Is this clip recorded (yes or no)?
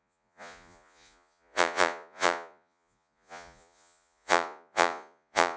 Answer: no